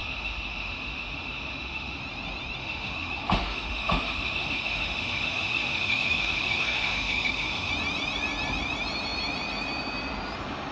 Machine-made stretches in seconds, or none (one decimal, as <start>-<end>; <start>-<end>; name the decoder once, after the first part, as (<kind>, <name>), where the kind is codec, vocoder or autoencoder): 0.0-2.0 (autoencoder, DAC-VAE); 2.6-7.7